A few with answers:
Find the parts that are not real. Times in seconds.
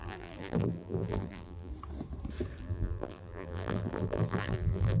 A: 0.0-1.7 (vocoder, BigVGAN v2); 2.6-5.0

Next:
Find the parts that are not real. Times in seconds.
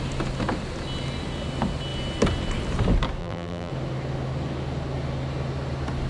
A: 3.2-3.7 (vocoder, BigVGAN v2)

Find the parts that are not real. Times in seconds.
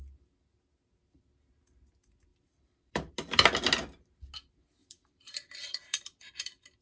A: 2.3-3.1 (vocoder, BigVGAN v2); 4.8-6.8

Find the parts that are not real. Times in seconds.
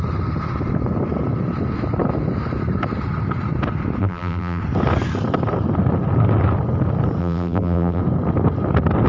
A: 4.0-4.6 (vocoder, BigVGAN v2); 7.2-8.0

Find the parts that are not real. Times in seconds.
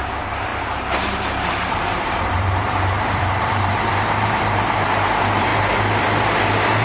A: 0.0-5.5 (vocoder, BigVGAN v2); 6.2-6.8